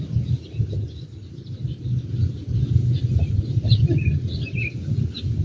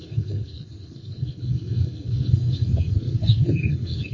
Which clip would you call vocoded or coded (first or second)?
second